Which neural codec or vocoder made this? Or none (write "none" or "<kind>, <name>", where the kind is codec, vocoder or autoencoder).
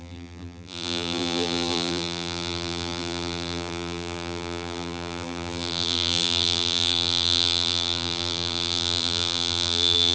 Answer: vocoder, BigVGAN v2